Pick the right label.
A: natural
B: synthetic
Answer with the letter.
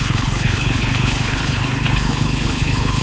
B